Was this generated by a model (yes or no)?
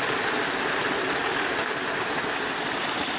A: no